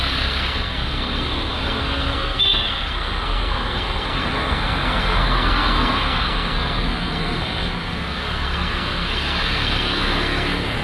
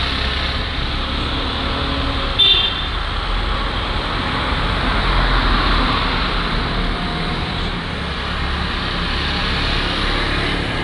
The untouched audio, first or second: second